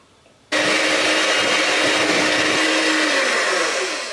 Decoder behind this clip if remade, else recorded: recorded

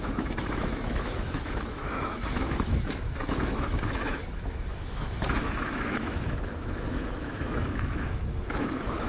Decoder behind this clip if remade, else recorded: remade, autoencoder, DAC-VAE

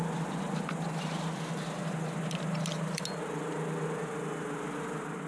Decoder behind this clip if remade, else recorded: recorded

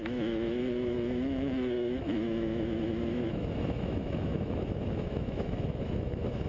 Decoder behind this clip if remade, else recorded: remade, autoencoder, DAC-VAE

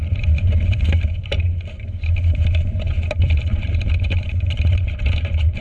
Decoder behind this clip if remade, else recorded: remade, vocoder, BigVGAN v2